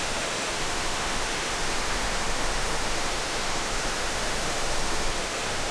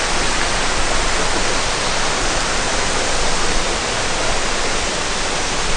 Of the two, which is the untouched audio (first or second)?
second